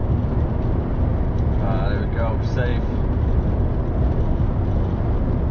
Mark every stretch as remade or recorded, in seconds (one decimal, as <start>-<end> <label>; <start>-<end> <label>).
0.0-5.5 recorded